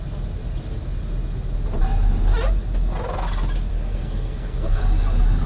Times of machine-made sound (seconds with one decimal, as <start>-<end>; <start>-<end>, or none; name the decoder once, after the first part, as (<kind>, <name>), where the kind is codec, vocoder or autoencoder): 3.7-4.8 (codec, SNAC)